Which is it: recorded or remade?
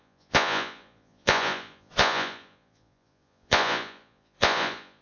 remade